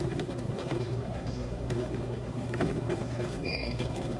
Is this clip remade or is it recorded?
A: remade